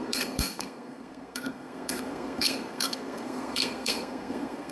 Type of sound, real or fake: fake